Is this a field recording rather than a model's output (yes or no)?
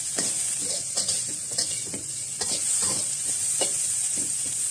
no